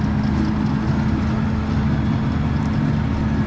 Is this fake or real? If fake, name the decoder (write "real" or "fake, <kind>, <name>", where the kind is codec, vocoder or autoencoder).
real